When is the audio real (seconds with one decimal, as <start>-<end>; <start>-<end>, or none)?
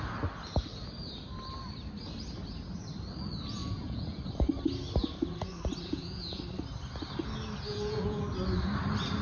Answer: 0.0-3.6; 4.2-5.8; 6.4-7.7; 8.2-9.2